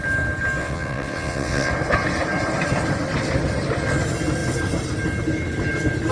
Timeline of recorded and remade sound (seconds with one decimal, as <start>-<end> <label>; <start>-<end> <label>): 0.0-0.6 recorded; 0.6-1.7 remade; 1.7-6.1 recorded

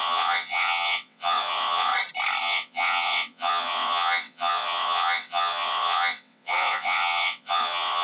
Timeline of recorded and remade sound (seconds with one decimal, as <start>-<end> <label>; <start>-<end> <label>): 0.0-1.9 remade; 1.9-2.4 recorded; 2.4-8.0 remade

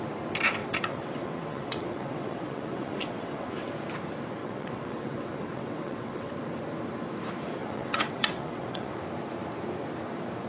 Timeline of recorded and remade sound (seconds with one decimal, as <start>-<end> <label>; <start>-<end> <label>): 0.0-0.6 recorded; 0.6-3.7 remade; 3.7-4.4 recorded; 4.4-6.3 remade; 6.3-7.6 recorded; 7.6-9.0 remade; 9.0-10.5 recorded

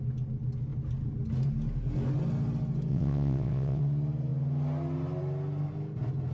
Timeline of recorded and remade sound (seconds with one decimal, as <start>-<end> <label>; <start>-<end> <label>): 0.0-2.9 recorded; 2.9-3.8 remade; 3.8-6.3 recorded

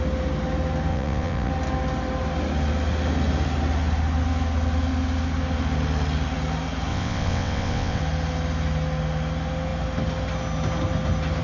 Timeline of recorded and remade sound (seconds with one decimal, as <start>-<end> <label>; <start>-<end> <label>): 0.0-0.9 recorded; 0.9-1.5 remade; 1.5-6.9 recorded; 6.9-8.0 remade; 8.0-11.4 recorded

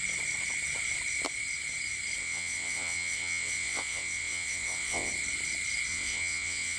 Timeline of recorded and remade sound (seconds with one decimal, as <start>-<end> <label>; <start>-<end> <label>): 0.0-2.2 recorded; 2.2-5.1 remade; 5.1-5.9 recorded; 5.9-6.8 remade

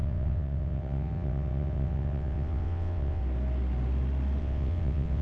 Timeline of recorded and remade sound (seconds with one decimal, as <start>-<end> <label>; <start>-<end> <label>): 0.0-3.2 remade; 3.2-4.4 recorded; 4.4-5.2 remade